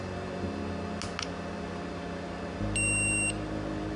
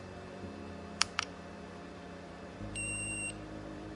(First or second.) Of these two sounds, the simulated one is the second